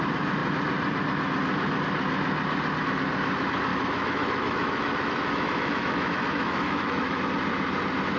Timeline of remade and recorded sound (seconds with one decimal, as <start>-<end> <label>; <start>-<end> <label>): 0.0-3.7 recorded; 3.7-7.3 remade; 7.3-8.2 recorded